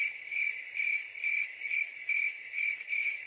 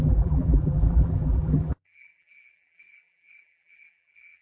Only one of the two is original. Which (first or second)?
first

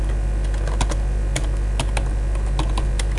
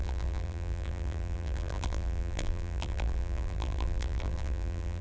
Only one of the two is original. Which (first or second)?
first